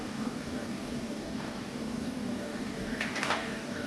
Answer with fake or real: fake